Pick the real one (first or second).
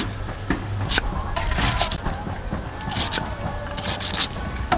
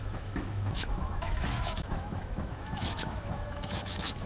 first